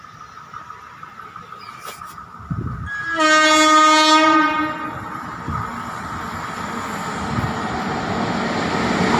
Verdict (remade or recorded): recorded